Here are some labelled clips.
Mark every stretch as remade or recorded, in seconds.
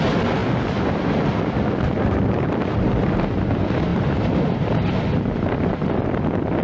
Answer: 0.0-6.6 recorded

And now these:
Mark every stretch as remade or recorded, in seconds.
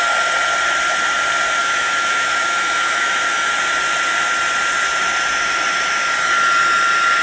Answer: 0.0-1.6 recorded; 1.6-3.5 remade; 3.5-7.2 recorded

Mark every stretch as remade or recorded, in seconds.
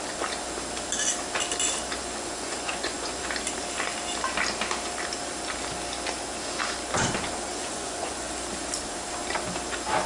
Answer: 0.0-2.0 recorded; 2.0-3.2 remade; 3.2-7.5 recorded; 7.5-8.3 remade; 8.3-10.1 recorded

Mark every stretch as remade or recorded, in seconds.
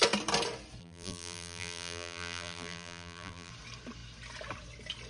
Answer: 0.0-0.8 recorded; 0.8-3.5 remade; 3.5-5.1 recorded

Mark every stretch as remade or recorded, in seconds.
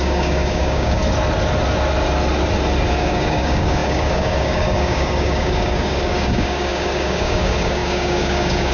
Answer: 0.0-1.0 remade; 1.0-2.9 recorded; 2.9-8.7 remade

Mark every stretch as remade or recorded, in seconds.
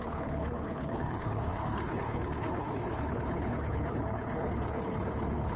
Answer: 0.0-5.6 remade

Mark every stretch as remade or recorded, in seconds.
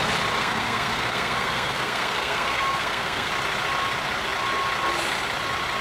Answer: 0.0-0.4 recorded; 0.4-3.3 remade; 3.3-5.8 recorded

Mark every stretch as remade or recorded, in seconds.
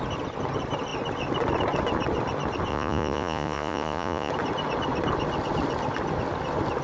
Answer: 0.0-2.7 recorded; 2.7-4.3 remade; 4.3-6.8 recorded